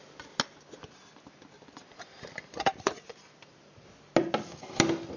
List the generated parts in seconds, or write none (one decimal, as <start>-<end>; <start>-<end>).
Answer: 0.8-3.1